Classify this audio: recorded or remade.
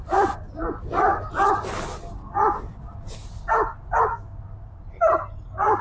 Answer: recorded